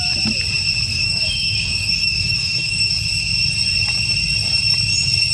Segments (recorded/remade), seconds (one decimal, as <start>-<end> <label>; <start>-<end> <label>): 0.0-0.9 recorded; 0.9-2.9 remade; 2.9-5.3 recorded